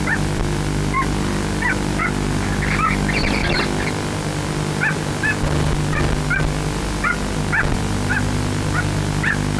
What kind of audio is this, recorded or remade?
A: recorded